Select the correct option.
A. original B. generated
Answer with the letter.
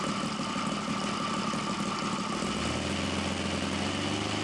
A